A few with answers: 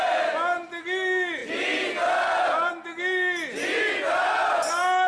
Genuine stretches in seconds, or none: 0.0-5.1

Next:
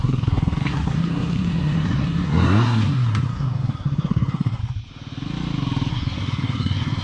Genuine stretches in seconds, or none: 4.6-5.9

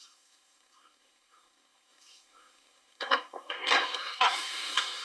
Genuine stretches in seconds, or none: none

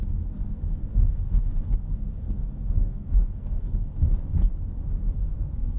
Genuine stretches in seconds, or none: 4.1-5.1

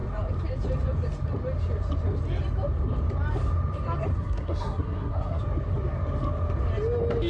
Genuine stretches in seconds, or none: 0.0-4.1; 5.4-7.3